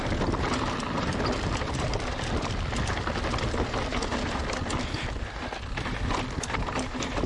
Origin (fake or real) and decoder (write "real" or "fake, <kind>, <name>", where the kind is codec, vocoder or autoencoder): fake, vocoder, BigVGAN v2